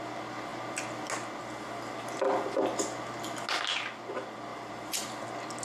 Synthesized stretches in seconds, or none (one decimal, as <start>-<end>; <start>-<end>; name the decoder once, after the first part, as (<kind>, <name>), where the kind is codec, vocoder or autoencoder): 4.5-5.1 (vocoder, BigVGAN v2)